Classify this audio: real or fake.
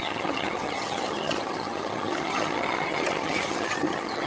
fake